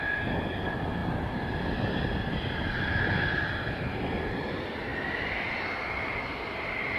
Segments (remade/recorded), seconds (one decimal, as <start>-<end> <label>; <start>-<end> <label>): 0.0-7.0 recorded